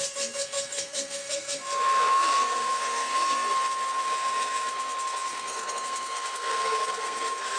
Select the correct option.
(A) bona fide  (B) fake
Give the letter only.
B